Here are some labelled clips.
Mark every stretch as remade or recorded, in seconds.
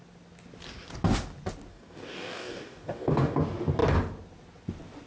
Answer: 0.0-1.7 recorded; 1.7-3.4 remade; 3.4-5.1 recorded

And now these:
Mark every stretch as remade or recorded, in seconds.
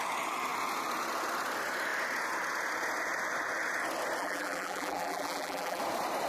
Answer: 0.0-4.2 recorded; 4.2-5.8 remade; 5.8-6.3 recorded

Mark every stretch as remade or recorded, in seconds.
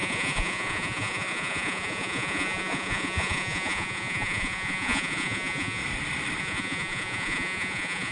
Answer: 0.0-5.8 remade; 5.8-6.4 recorded; 6.4-8.1 remade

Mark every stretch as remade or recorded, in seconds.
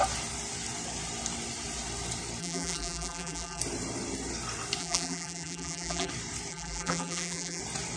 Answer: 0.0-2.4 recorded; 2.4-3.6 remade; 3.6-4.8 recorded; 4.8-6.1 remade; 6.1-6.5 recorded; 6.5-7.6 remade; 7.6-8.0 recorded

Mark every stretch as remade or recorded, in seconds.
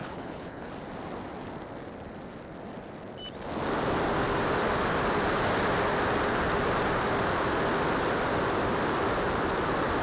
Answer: 0.0-0.7 remade; 0.7-10.0 recorded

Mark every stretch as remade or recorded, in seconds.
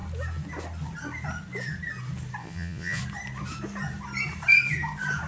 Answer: 0.0-2.4 recorded; 2.4-3.0 remade; 3.0-5.3 recorded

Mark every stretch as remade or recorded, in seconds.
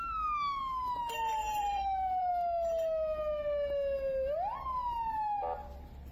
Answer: 0.0-1.4 recorded; 1.4-2.3 remade; 2.3-6.1 recorded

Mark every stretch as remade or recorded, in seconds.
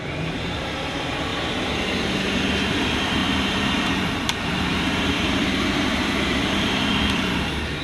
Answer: 0.0-1.3 remade; 1.3-2.7 recorded; 2.7-7.8 remade